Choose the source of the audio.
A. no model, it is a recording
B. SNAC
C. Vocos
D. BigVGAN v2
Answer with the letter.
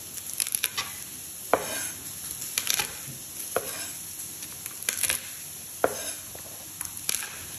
A